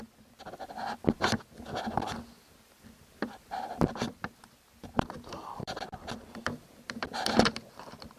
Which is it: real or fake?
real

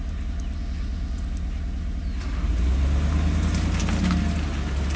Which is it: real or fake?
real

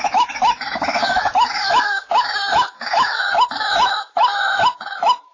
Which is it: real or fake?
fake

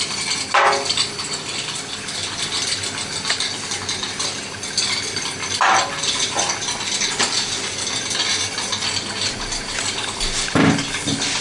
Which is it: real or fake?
real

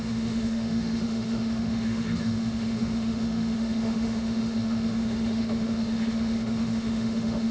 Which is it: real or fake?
fake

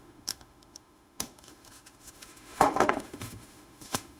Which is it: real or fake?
fake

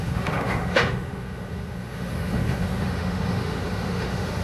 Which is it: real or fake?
fake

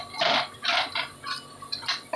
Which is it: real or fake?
real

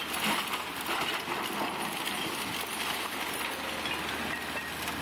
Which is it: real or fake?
real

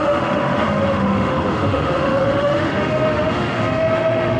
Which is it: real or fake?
fake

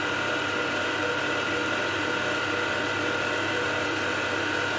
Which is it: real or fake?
real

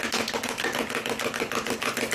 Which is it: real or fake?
real